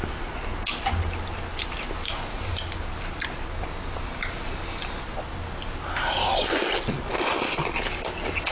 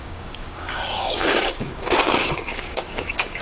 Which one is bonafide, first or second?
first